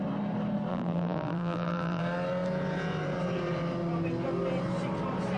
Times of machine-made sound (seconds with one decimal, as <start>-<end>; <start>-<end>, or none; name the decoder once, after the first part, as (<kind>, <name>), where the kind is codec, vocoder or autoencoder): 0.7-2.0 (vocoder, BigVGAN v2)